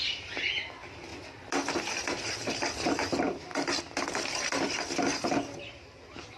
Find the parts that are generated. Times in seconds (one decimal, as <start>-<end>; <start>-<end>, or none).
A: none